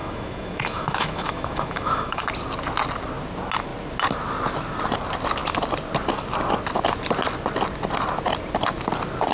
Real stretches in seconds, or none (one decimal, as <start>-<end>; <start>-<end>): 2.3-9.3